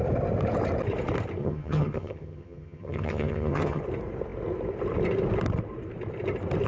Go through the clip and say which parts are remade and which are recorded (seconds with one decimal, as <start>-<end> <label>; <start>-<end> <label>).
0.0-1.4 recorded; 1.4-3.8 remade; 3.8-6.7 recorded